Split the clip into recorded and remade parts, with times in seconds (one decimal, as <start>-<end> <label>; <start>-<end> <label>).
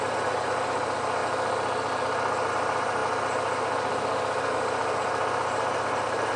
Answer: 0.0-1.2 remade; 1.2-2.5 recorded; 2.5-3.0 remade; 3.0-4.5 recorded; 4.5-6.4 remade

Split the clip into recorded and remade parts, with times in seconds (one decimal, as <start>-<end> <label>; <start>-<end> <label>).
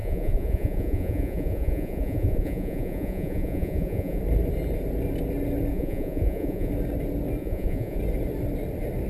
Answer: 0.0-4.2 remade; 4.2-5.7 recorded; 5.7-6.7 remade; 6.7-7.4 recorded; 7.4-8.0 remade; 8.0-9.1 recorded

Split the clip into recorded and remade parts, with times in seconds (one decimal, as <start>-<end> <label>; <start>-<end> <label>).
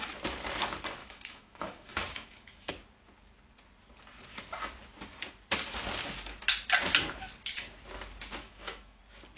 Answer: 0.0-1.0 recorded; 1.0-2.7 remade; 2.7-8.4 recorded; 8.4-9.0 remade; 9.0-9.4 recorded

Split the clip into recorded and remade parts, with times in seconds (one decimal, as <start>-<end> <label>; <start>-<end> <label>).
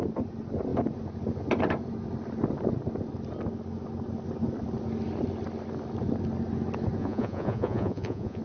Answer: 0.0-7.0 recorded; 7.0-8.4 remade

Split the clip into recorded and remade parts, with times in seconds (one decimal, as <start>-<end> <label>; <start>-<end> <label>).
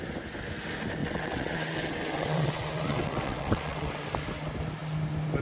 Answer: 0.0-1.0 recorded; 1.0-3.9 remade; 3.9-5.4 recorded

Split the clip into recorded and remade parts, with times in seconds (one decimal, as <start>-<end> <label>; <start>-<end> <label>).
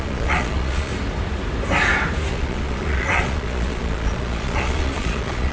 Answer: 0.0-0.9 remade; 0.9-2.3 recorded; 2.3-5.5 remade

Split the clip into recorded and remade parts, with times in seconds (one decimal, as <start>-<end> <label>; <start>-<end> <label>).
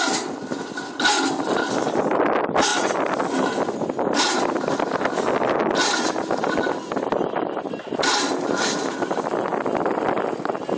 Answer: 0.0-10.8 recorded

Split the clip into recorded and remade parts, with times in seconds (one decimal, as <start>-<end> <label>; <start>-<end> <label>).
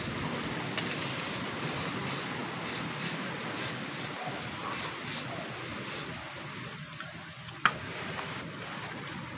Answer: 0.0-9.4 recorded